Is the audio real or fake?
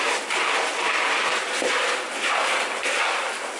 real